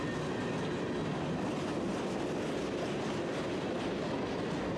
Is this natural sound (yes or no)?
yes